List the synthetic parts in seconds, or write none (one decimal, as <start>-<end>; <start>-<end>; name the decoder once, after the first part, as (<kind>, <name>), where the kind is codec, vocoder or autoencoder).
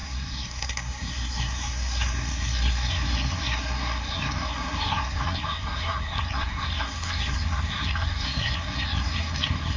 0.0-9.8 (codec, SNAC)